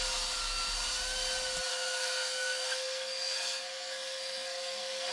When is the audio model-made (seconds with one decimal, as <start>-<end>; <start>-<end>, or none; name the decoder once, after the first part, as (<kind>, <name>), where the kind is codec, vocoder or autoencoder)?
1.7-5.1 (codec, SNAC)